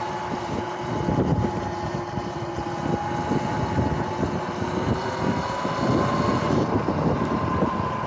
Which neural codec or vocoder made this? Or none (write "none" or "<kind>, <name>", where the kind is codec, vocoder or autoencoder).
none